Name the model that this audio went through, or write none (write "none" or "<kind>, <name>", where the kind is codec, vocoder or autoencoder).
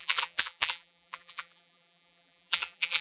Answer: vocoder, BigVGAN v2